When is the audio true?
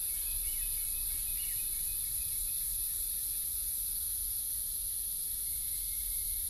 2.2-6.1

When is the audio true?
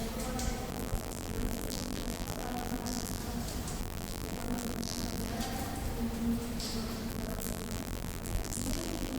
0.0-0.7; 3.2-3.8; 5.3-7.1